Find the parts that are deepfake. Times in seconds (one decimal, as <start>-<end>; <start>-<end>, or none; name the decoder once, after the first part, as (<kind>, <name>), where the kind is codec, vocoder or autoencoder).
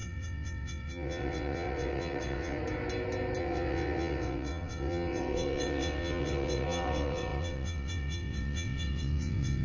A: 0.0-2.6 (vocoder, WaveNeXt); 3.4-9.6